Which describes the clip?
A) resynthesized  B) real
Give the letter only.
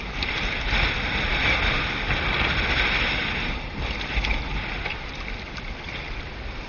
B